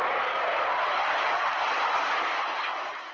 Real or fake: real